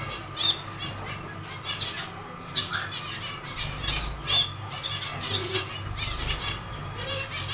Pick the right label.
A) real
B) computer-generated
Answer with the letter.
A